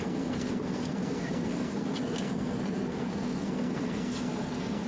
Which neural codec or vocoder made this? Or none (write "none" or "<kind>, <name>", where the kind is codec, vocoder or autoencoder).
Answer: codec, SNAC